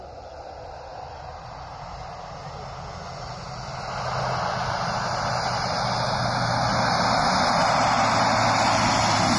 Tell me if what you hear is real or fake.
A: real